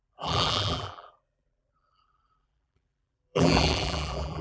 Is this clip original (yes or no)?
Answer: no